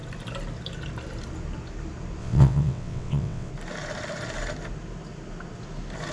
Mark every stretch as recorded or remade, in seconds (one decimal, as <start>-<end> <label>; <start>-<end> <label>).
0.0-2.2 recorded; 2.2-3.5 remade; 3.5-6.1 recorded